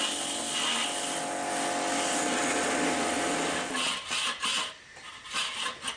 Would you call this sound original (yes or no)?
yes